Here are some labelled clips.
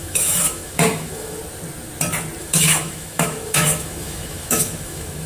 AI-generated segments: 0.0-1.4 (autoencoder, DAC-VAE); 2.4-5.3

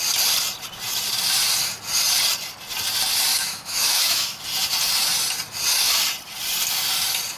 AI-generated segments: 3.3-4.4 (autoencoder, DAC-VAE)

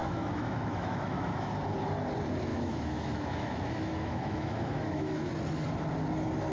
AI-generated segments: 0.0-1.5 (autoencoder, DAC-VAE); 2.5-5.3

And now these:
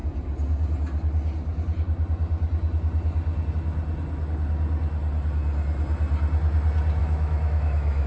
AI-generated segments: 7.0-8.1 (autoencoder, DAC-VAE)

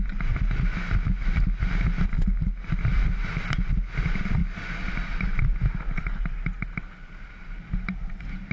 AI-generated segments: none

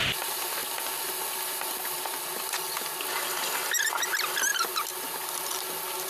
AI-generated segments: none

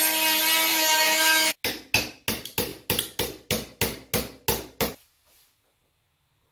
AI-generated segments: 0.7-1.5 (autoencoder, DAC-VAE)

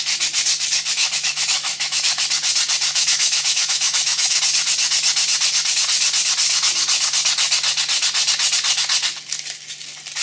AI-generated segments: 1.0-2.2 (autoencoder, DAC-VAE); 2.9-4.4